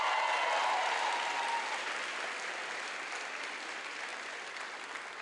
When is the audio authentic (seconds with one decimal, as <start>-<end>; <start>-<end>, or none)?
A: 0.0-4.1; 4.7-5.2